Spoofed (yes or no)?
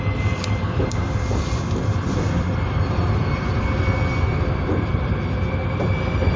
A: no